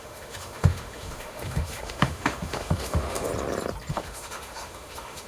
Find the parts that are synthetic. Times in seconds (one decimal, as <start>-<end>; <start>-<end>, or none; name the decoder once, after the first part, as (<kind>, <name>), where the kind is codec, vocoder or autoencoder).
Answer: 0.0-3.3 (autoencoder, DAC-VAE); 3.9-5.3